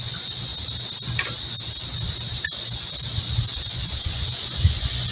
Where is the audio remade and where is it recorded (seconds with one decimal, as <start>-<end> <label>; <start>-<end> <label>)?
0.0-0.5 remade; 0.5-3.6 recorded; 3.6-5.1 remade